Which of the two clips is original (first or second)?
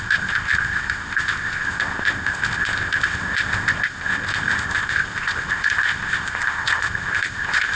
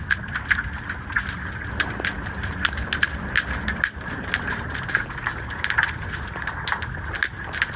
second